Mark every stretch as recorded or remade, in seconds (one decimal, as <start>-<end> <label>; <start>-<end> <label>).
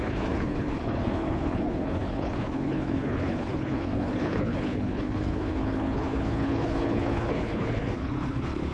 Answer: 0.0-8.7 remade